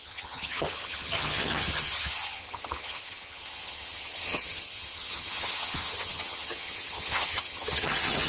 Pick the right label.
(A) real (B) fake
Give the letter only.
B